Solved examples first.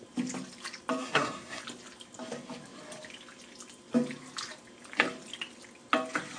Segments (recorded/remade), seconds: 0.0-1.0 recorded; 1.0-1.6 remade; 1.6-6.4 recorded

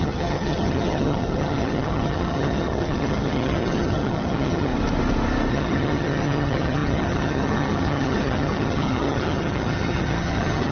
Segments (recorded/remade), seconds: 0.0-4.7 remade; 4.7-5.5 recorded; 5.5-10.7 remade

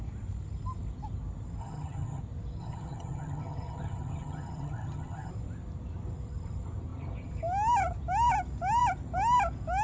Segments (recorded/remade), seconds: 0.0-1.6 recorded; 1.6-2.2 remade; 2.2-2.6 recorded; 2.6-5.3 remade; 5.3-9.8 recorded

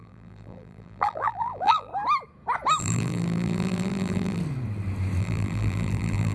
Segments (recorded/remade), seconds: 0.0-1.9 remade; 1.9-2.8 recorded; 2.8-4.4 remade; 4.4-5.2 recorded; 5.2-6.3 remade